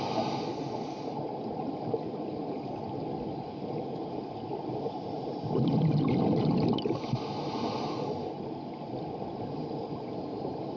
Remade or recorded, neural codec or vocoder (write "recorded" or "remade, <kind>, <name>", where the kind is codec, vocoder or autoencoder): recorded